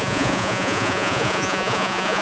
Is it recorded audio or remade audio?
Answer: remade